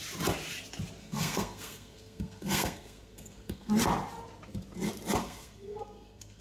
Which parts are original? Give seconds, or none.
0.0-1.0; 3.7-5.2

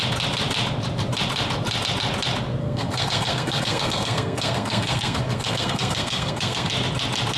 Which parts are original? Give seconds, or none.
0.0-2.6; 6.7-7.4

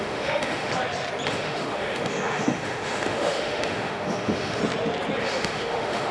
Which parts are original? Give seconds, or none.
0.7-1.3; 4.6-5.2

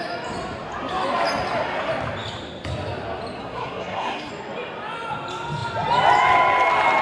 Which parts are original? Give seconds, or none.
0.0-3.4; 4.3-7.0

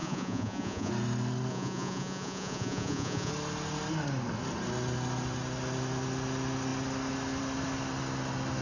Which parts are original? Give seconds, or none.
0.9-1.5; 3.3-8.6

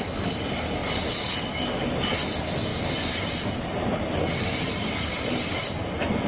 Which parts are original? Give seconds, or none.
0.0-6.3